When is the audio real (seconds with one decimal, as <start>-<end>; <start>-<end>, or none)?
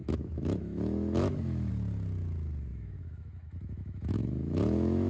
1.7-2.7